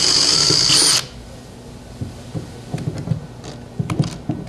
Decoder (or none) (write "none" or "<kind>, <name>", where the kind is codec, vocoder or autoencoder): none